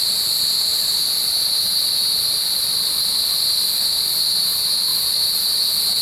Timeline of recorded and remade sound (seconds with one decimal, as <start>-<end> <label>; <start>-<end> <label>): 0.0-0.7 recorded; 0.7-4.3 remade; 4.3-4.9 recorded; 4.9-5.6 remade; 5.6-6.0 recorded